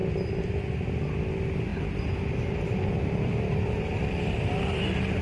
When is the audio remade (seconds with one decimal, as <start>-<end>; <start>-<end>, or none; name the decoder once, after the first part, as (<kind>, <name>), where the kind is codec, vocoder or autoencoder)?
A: 1.7-4.8 (vocoder, BigVGAN v2)